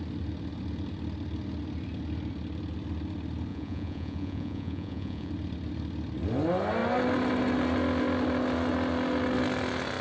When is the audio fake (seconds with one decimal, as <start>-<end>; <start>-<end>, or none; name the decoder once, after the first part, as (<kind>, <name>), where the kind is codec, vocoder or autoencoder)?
3.5-5.3 (vocoder, Vocos)